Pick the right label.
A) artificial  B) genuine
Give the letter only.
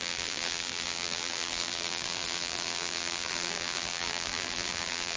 A